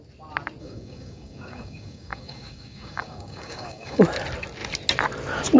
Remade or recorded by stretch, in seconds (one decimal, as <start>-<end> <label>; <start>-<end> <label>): 0.0-0.6 recorded; 0.6-4.0 remade; 4.0-5.6 recorded